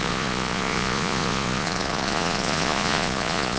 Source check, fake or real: fake